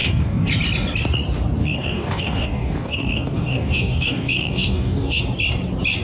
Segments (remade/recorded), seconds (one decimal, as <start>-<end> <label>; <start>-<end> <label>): 0.0-0.5 remade; 0.5-1.6 recorded; 1.6-5.2 remade; 5.2-6.0 recorded